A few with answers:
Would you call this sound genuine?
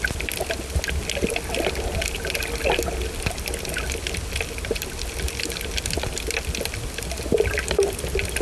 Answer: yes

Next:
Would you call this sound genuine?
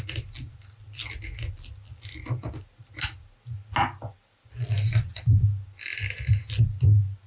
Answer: yes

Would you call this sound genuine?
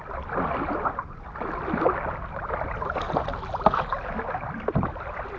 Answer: yes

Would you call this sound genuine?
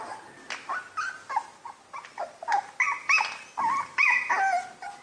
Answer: yes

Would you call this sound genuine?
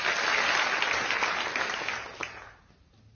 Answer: yes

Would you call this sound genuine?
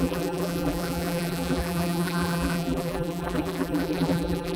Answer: no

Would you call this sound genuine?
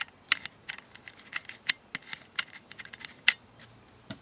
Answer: yes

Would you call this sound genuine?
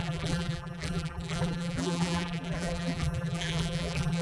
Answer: no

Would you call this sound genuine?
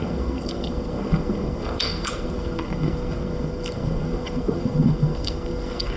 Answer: no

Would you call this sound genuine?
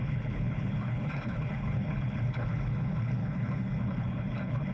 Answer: no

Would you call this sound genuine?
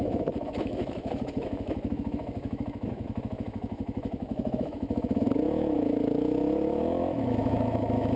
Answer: no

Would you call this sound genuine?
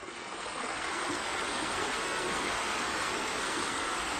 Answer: no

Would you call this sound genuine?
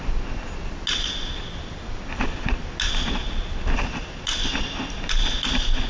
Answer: yes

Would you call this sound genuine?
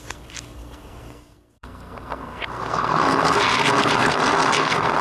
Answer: no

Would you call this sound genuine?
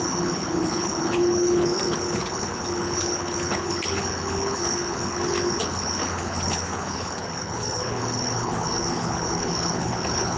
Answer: no